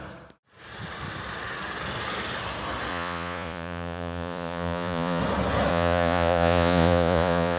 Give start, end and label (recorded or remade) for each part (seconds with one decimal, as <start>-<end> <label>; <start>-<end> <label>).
0.0-2.9 recorded; 2.9-5.2 remade; 5.2-5.7 recorded; 5.7-7.6 remade